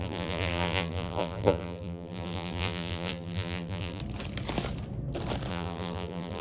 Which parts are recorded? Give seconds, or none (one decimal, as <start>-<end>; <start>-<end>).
4.0-5.5